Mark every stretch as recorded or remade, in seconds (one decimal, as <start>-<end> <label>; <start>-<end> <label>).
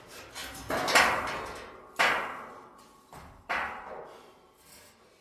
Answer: 0.0-5.2 recorded